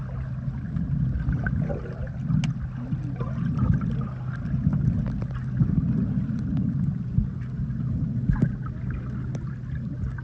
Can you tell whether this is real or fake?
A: real